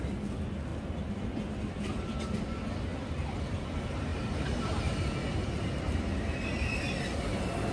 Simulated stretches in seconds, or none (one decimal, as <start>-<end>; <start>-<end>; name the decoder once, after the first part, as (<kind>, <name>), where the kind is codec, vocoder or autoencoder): none